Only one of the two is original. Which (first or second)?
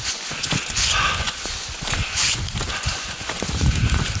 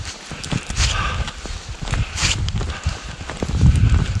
second